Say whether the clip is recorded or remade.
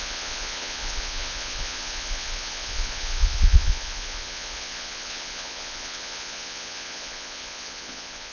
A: remade